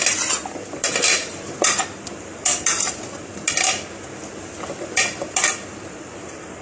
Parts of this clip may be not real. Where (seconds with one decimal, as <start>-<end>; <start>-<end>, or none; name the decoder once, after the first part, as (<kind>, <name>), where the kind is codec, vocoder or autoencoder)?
none